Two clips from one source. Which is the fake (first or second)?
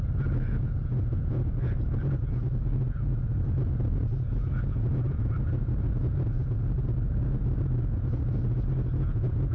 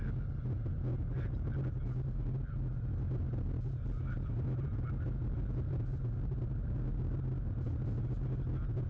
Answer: first